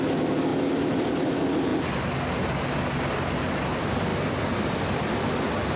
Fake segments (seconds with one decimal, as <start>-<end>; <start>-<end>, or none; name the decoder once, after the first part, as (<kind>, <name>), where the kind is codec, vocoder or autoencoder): none